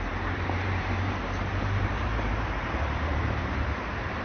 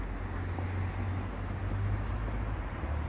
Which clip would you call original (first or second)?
second